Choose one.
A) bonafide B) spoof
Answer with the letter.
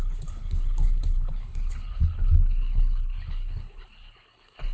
B